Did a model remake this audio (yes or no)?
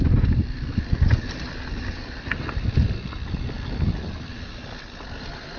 no